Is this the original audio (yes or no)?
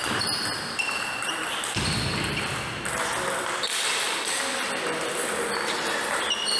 no